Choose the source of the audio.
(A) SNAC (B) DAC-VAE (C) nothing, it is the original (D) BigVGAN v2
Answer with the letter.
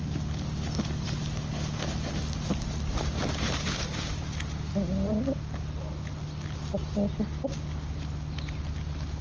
C